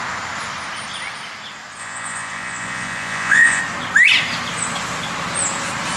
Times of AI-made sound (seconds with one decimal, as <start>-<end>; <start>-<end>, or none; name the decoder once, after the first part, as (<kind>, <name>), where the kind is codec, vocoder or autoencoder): 1.8-3.6 (vocoder, Vocos)